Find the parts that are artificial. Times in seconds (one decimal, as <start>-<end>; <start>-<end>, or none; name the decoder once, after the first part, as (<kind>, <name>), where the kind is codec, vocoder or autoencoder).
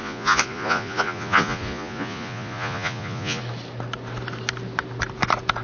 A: 0.0-3.4 (vocoder, Vocos)